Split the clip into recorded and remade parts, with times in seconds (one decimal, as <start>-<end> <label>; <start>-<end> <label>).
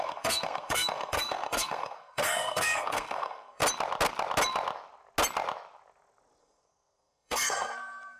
0.0-3.6 remade; 3.6-6.4 recorded; 6.4-8.2 remade